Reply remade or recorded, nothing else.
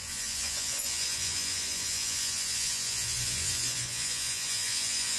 remade